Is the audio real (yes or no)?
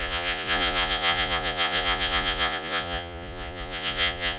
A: no